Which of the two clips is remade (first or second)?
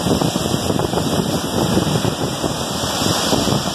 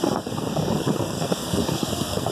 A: second